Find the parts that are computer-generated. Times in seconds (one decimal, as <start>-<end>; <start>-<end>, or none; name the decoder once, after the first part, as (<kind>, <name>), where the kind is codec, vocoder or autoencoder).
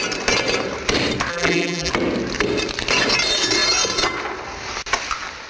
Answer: 1.3-1.9 (vocoder, BigVGAN v2)